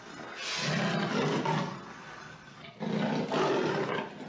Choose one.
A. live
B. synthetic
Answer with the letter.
A